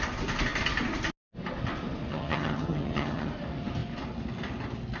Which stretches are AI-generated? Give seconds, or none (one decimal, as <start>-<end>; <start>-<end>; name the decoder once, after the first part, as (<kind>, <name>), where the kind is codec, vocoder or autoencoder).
2.1-3.3 (vocoder, HiFi-GAN)